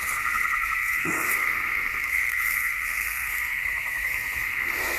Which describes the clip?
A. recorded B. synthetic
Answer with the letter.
B